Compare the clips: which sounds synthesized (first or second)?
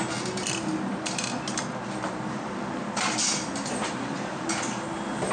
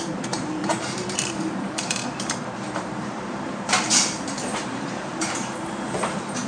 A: second